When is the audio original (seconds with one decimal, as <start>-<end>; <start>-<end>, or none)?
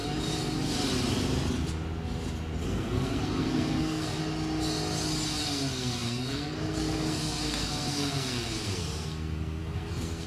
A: 0.0-2.6; 4.2-5.4